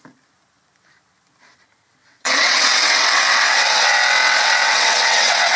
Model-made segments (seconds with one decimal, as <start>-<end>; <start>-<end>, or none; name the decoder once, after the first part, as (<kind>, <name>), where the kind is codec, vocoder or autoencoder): 2.0-5.6 (vocoder, WaveNeXt)